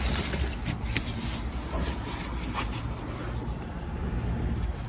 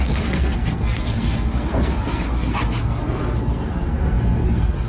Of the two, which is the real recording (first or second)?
first